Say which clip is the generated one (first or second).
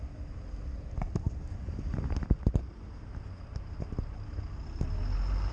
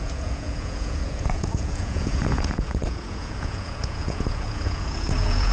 second